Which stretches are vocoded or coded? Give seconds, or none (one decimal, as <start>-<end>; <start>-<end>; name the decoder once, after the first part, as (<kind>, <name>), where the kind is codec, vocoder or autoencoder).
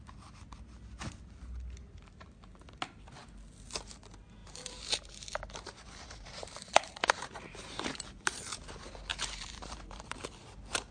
4.4-8.7 (vocoder, BigVGAN v2); 9.1-10.2